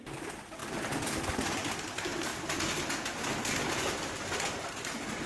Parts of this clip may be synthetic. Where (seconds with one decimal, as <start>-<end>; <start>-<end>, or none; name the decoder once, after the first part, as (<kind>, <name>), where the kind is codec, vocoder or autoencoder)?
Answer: none